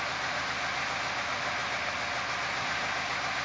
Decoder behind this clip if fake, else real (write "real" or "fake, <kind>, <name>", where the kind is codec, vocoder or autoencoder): real